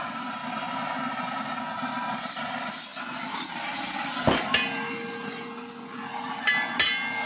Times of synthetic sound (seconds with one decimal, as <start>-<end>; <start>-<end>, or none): none